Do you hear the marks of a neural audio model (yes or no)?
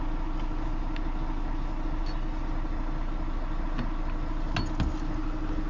no